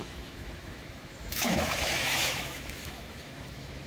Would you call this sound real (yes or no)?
no